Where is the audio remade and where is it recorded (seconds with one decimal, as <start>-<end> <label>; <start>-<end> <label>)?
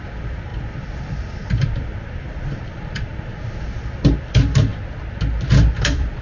0.0-4.7 remade; 4.7-5.7 recorded; 5.7-6.2 remade